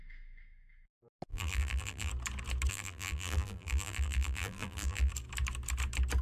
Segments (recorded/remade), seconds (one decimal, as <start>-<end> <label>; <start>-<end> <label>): 0.0-1.3 recorded; 1.3-2.1 remade; 2.1-2.7 recorded; 2.7-5.1 remade; 5.1-6.2 recorded